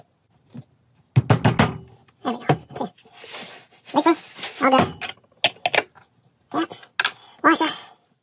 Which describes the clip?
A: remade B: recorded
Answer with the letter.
B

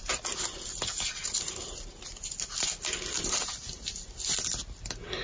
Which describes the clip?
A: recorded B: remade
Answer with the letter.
A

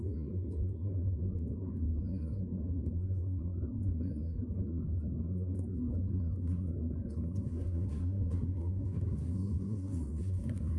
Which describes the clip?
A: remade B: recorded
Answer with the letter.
A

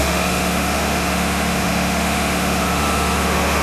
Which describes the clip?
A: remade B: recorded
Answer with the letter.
A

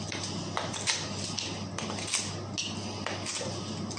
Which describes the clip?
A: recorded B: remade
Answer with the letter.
A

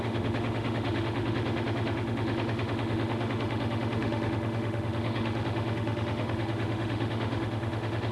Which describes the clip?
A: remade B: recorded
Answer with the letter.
A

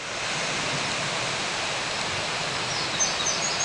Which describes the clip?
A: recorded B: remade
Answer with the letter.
A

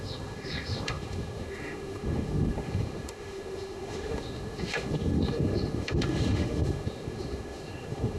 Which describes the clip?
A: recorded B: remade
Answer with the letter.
B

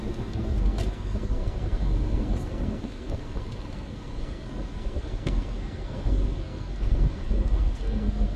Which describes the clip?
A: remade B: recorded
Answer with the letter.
A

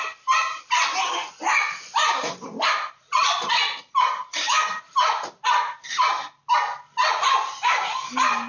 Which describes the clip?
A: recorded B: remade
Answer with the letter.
A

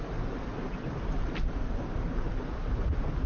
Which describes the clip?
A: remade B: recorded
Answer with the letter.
B